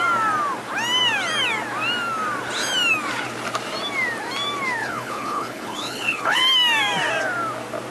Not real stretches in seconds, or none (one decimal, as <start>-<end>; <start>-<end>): 4.8-6.4